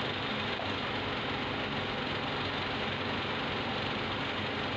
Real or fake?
real